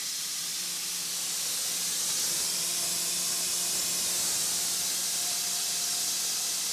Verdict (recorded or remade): recorded